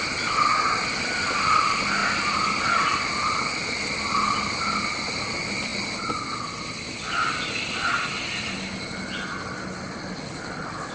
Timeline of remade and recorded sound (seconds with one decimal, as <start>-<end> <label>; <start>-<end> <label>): 0.0-10.9 recorded